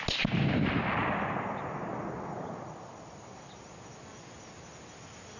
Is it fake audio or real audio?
real